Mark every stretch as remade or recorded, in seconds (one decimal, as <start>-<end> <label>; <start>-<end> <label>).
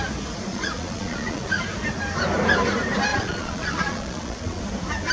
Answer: 0.0-0.5 recorded; 0.5-1.5 remade; 1.5-3.1 recorded; 3.1-4.6 remade; 4.6-5.1 recorded